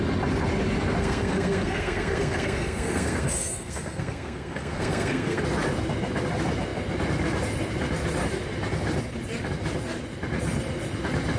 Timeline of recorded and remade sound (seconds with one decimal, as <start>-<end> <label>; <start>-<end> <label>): 0.0-1.0 recorded; 1.0-5.4 remade; 5.4-11.4 recorded